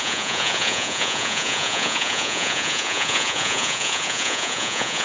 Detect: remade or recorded remade